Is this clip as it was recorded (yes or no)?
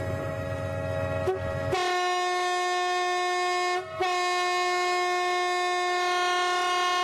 yes